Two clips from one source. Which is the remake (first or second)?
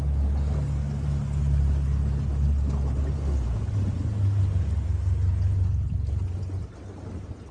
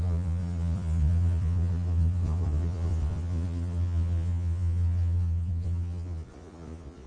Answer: second